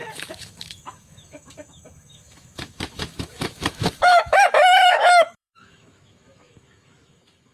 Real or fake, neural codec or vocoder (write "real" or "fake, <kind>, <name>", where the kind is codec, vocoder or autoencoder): fake, autoencoder, DAC-VAE